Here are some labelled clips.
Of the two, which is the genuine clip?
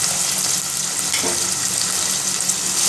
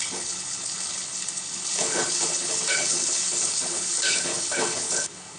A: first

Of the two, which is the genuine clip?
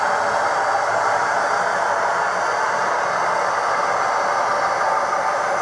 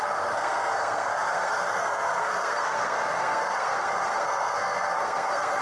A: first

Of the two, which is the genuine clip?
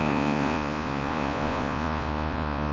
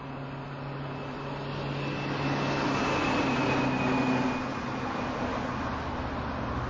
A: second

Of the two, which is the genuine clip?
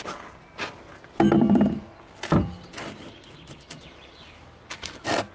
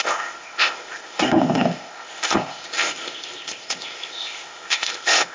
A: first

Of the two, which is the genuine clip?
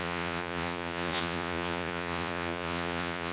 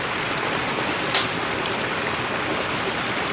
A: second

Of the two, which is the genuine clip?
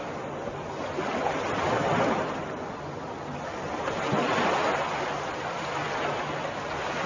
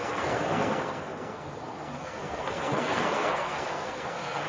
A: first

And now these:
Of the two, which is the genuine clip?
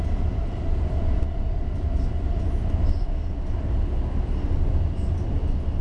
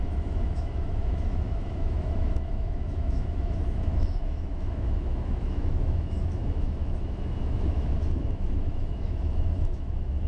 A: first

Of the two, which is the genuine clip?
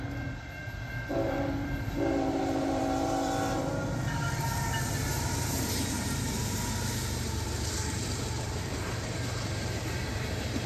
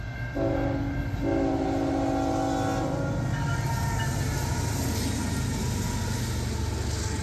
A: second